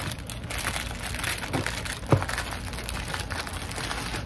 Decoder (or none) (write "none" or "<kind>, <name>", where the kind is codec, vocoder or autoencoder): none